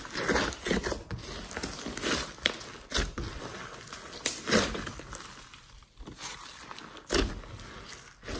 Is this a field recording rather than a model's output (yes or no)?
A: yes